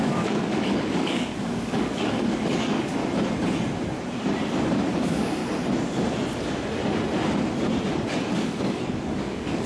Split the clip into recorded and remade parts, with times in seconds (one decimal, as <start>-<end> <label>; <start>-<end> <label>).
0.0-3.0 remade; 3.0-4.9 recorded; 4.9-5.4 remade; 5.4-8.1 recorded; 8.1-9.7 remade